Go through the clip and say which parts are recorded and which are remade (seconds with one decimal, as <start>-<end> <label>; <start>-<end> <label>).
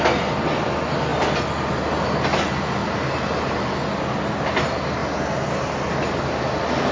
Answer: 0.0-6.9 recorded